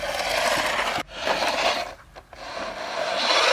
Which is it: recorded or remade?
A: recorded